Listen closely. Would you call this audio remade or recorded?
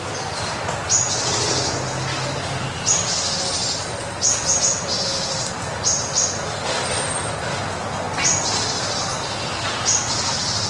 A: recorded